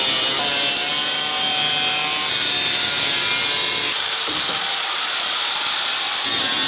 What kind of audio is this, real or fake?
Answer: real